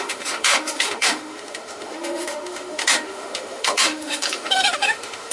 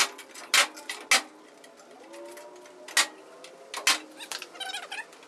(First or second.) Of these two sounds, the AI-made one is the first